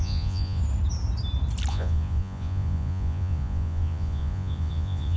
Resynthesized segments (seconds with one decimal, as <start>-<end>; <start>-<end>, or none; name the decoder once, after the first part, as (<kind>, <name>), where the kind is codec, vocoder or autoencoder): 0.0-0.6 (vocoder, Vocos); 1.7-5.2